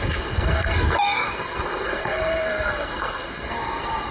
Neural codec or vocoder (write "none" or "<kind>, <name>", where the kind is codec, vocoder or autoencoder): codec, SNAC